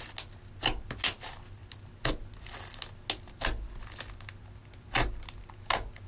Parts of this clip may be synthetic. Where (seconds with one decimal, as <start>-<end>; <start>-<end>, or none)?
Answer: none